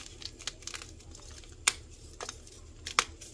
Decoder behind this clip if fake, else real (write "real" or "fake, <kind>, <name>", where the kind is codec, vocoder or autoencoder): real